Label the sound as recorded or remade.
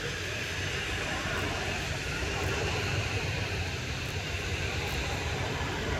remade